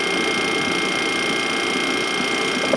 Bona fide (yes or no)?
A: yes